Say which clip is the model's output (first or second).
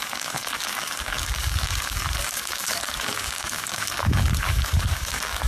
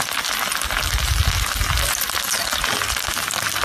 first